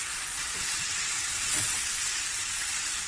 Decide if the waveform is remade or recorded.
remade